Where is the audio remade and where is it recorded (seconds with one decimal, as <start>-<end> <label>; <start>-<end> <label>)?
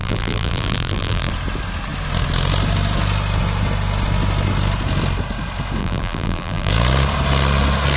0.0-1.3 remade; 1.3-5.8 recorded; 5.8-6.7 remade; 6.7-8.0 recorded